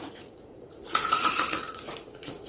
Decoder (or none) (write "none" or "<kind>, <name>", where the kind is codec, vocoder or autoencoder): vocoder, Vocos